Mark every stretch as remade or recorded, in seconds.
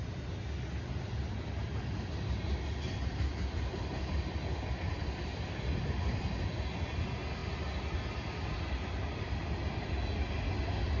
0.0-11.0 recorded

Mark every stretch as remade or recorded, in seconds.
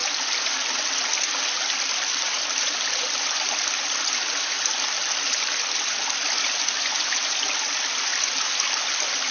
0.0-1.6 recorded; 1.6-4.4 remade; 4.4-5.4 recorded; 5.4-8.1 remade; 8.1-8.8 recorded; 8.8-9.3 remade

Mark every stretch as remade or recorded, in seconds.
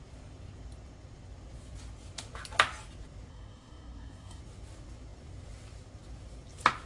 0.0-3.3 recorded; 3.3-4.4 remade; 4.4-6.9 recorded